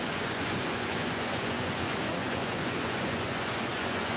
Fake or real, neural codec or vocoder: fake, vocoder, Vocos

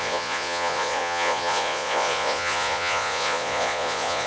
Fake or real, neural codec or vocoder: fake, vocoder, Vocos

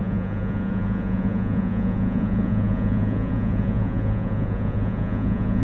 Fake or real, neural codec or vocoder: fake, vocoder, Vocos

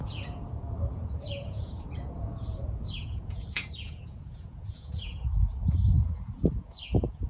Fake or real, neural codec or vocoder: fake, vocoder, Vocos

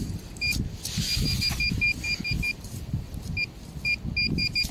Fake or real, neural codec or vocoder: real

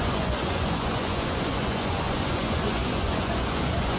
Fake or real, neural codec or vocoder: fake, vocoder, Vocos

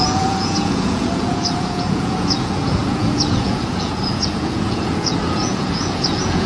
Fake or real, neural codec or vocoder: fake, vocoder, Vocos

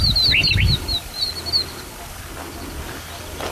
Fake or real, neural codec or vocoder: real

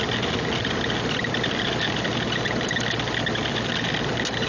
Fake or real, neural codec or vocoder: real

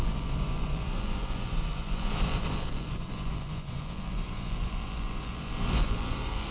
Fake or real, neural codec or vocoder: fake, vocoder, Vocos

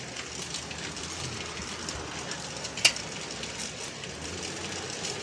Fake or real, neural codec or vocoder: real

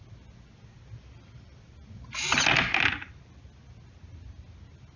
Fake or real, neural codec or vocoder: real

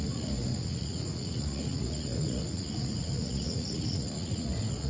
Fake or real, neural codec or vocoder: fake, vocoder, Vocos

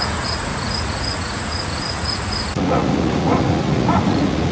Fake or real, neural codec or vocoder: fake, vocoder, Vocos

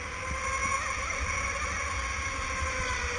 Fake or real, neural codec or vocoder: real